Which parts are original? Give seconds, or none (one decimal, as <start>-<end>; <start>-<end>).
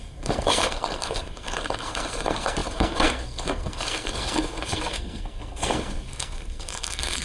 none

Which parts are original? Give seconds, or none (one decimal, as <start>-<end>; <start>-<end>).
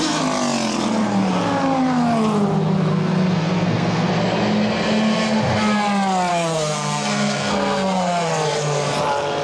0.0-2.9; 4.1-6.3; 8.3-9.4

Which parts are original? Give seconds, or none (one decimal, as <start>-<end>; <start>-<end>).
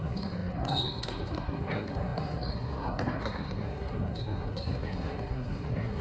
none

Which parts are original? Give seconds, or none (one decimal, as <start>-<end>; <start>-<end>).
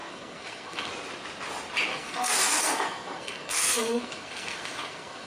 0.9-1.9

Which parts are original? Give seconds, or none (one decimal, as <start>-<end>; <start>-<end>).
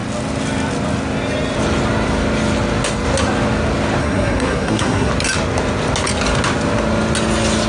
0.0-4.0; 5.1-7.7